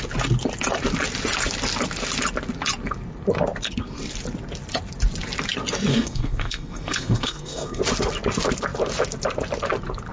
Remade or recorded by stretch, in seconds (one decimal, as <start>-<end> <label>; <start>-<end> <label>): 0.0-5.9 recorded; 5.9-7.8 remade; 7.8-10.1 recorded